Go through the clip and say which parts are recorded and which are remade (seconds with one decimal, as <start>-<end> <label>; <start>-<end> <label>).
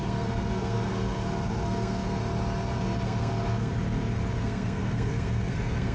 0.0-2.2 remade; 2.2-2.8 recorded; 2.8-3.7 remade; 3.7-4.4 recorded; 4.4-5.9 remade